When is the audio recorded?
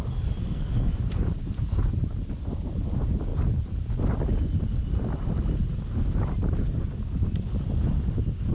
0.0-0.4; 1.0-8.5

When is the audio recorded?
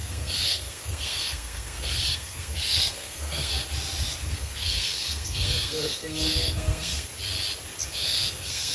3.5-4.3; 7.1-7.9